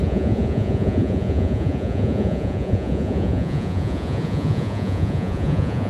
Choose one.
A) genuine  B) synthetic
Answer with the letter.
B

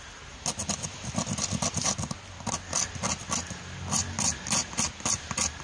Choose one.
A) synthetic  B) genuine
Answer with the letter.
B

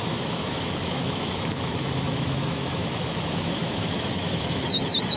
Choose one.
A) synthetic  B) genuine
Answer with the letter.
A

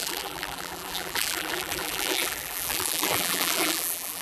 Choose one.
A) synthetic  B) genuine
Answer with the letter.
A